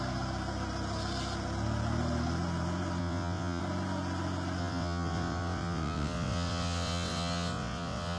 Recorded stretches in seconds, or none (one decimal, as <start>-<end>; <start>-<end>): 0.0-3.0; 3.6-4.6

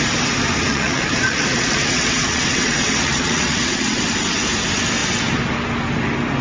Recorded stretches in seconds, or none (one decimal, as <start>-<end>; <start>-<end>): 0.0-0.7; 4.0-6.4

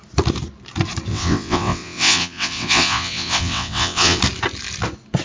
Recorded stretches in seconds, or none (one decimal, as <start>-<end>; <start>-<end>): 0.0-1.1; 4.2-5.2

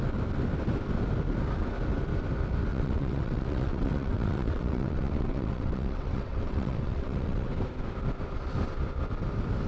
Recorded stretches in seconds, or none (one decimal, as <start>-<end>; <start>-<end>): 0.0-2.7; 7.5-9.7

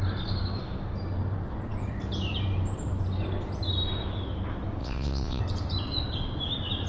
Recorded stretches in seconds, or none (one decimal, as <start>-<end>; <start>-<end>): 0.0-4.8; 5.4-6.9

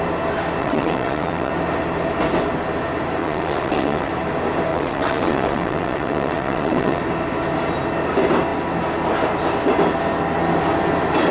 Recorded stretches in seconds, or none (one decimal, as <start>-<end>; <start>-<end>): 0.0-0.6; 1.5-3.2; 4.1-4.7; 7.0-11.3

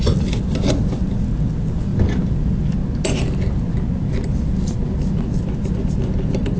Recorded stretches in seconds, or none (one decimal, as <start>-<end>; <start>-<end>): 0.0-6.6

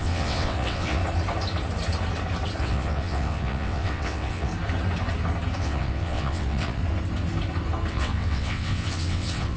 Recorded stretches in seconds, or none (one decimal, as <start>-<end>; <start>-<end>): 1.0-2.6; 4.5-5.6; 6.8-7.9